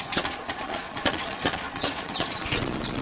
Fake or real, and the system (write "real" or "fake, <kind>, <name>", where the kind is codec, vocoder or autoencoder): fake, vocoder, Vocos